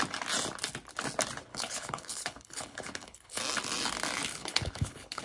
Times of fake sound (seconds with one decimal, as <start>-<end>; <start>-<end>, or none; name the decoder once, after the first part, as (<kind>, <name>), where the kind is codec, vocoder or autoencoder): 1.5-3.4 (codec, HILCodec); 4.3-5.2

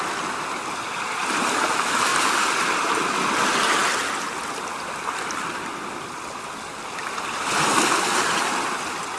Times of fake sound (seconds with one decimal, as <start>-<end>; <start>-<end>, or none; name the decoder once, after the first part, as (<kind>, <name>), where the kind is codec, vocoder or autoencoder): none

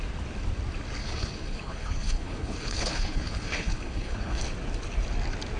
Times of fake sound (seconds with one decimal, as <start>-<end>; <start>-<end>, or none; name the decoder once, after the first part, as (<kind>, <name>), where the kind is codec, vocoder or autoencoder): 1.0-4.4 (codec, HILCodec)

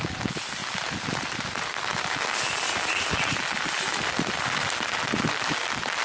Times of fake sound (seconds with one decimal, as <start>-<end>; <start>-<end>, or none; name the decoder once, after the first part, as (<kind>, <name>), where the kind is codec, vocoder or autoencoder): none

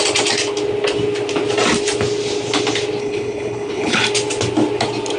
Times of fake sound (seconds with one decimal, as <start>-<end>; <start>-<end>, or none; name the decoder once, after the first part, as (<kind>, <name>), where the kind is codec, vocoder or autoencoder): 3.0-4.0 (codec, HILCodec)

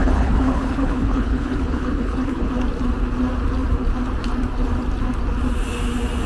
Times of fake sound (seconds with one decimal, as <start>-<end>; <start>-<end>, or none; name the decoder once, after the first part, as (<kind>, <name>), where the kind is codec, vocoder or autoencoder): 0.0-2.5 (codec, HILCodec)

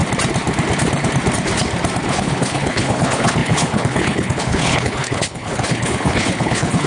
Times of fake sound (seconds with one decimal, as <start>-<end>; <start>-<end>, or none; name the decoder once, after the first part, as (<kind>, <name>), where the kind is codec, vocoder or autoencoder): 2.1-6.9 (codec, HILCodec)

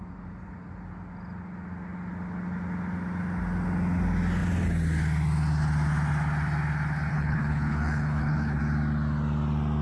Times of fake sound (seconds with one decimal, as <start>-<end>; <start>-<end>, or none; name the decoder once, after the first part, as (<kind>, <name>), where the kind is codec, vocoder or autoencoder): 7.1-8.6 (codec, HILCodec)